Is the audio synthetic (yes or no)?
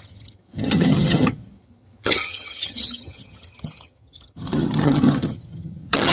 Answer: yes